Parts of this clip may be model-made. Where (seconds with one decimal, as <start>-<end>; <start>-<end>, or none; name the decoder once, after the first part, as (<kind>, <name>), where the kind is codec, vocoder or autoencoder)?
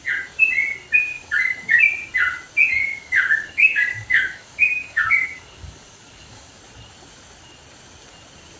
1.1-1.8 (codec, DAC); 2.8-6.6